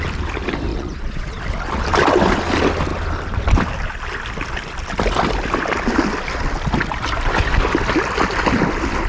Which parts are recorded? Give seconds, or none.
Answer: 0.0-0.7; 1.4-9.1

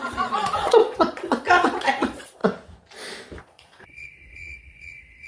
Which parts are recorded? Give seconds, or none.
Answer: 2.4-3.4

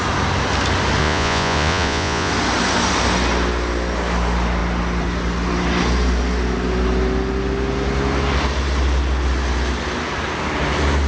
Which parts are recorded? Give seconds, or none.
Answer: 0.0-1.0; 2.3-11.1